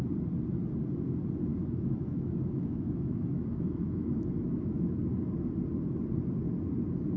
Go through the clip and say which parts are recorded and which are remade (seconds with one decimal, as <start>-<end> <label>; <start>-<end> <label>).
0.0-1.5 recorded; 1.5-5.0 remade; 5.0-7.2 recorded